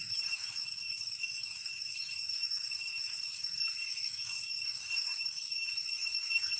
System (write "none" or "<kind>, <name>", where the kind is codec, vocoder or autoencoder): autoencoder, DAC-VAE